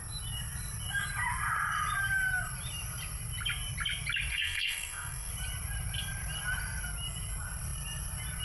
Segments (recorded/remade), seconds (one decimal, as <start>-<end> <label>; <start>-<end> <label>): 0.0-4.3 recorded; 4.3-5.3 remade; 5.3-8.4 recorded